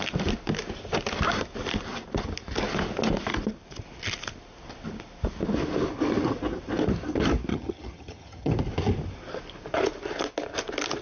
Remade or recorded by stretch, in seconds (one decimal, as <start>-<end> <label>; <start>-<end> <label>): 0.0-7.5 recorded; 7.5-8.5 remade; 8.5-11.0 recorded